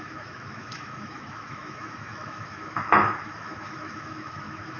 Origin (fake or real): fake